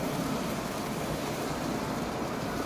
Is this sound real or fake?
fake